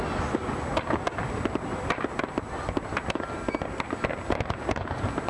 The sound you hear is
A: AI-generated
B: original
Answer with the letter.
B